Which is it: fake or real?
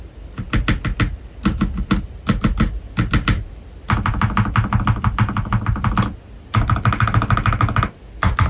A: real